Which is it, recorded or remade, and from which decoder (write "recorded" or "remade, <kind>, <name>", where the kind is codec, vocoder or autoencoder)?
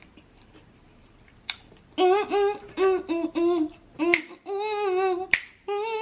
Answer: recorded